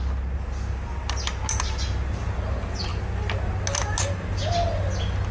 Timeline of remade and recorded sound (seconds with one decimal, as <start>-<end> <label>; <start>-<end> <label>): 0.0-5.3 recorded